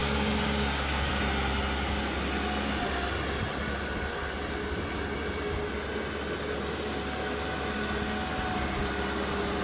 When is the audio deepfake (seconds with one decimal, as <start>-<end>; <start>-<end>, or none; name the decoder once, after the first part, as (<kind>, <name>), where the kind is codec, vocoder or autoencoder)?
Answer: 0.0-1.1 (codec, DAC)

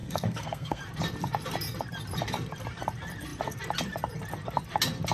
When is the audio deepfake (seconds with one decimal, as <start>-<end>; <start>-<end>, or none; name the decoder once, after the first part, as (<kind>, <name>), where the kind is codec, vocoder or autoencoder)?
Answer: 0.0-0.8 (codec, SNAC)